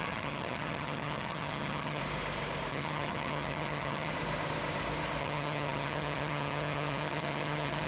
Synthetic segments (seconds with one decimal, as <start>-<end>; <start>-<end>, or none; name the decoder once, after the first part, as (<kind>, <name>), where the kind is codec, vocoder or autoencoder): 0.0-2.0 (vocoder, HiFi-GAN); 2.7-4.1; 5.2-7.9